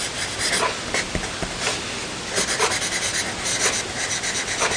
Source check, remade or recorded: recorded